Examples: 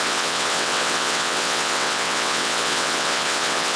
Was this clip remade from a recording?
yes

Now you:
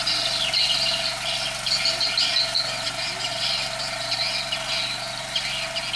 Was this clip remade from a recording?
no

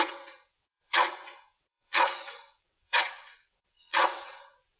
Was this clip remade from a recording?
yes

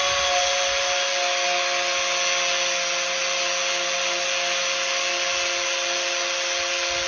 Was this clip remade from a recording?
no